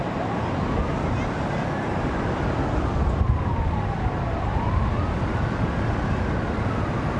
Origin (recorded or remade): recorded